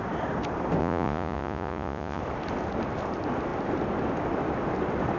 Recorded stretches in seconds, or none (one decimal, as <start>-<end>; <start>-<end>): 0.0-0.8; 2.2-5.2